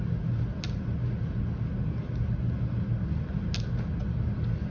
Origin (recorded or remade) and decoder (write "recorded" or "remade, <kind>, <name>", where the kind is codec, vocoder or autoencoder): recorded